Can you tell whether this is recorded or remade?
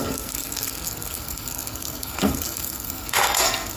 remade